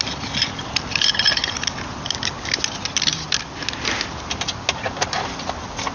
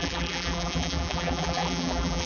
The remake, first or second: second